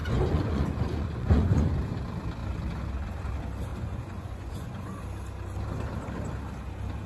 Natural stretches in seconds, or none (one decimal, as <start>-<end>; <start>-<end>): 1.7-3.7; 5.0-7.1